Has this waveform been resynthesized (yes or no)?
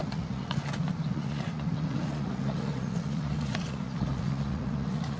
yes